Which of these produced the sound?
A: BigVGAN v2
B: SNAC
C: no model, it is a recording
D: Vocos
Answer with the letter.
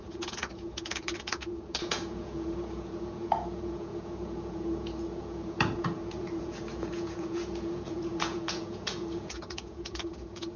D